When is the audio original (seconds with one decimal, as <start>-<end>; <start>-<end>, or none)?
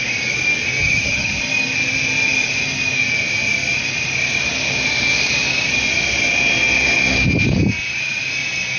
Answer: 0.0-0.8; 1.4-8.8